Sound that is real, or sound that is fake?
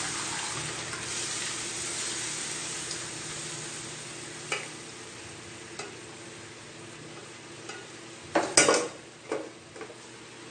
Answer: real